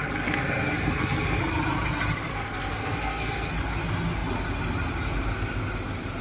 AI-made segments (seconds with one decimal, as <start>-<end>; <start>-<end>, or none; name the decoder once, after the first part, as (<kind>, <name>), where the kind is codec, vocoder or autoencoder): 0.0-1.4 (codec, SNAC); 2.3-3.5